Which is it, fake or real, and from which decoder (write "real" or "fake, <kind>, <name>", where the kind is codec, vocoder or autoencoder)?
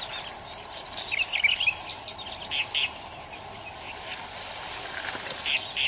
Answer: real